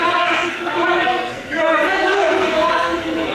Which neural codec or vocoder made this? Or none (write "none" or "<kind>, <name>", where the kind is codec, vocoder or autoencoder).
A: codec, SNAC